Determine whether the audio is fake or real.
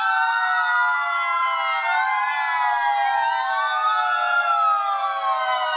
real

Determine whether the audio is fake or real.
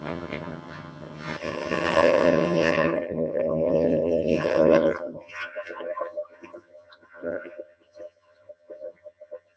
fake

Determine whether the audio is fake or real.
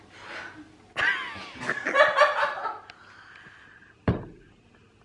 real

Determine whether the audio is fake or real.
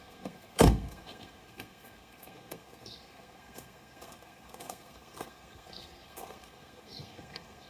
fake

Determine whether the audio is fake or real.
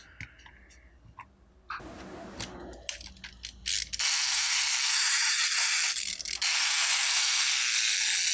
real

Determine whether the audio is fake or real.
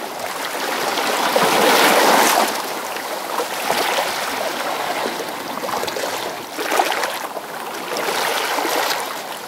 real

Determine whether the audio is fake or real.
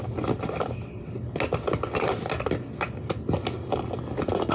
real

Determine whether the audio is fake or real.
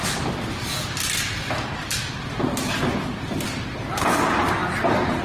real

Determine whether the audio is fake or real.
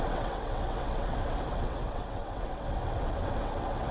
fake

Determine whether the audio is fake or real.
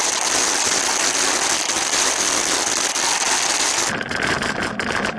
real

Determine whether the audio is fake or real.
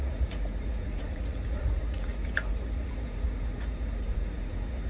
fake